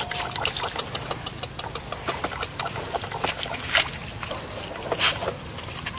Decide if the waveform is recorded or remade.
recorded